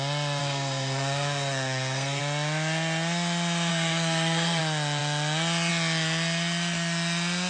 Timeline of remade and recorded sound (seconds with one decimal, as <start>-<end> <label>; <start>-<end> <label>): 0.0-0.4 recorded; 0.4-2.2 remade; 2.2-3.7 recorded; 3.7-4.6 remade; 4.6-7.5 recorded